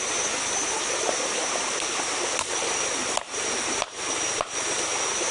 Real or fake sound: real